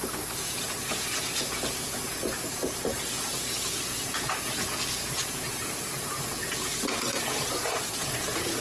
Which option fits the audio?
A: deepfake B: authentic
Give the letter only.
A